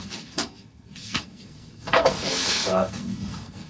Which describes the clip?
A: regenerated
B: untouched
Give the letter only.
A